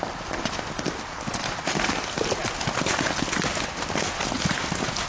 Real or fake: real